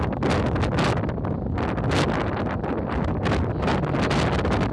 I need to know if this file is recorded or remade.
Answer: recorded